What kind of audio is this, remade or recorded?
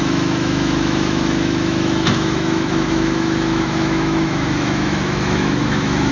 remade